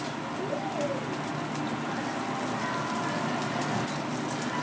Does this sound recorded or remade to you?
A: recorded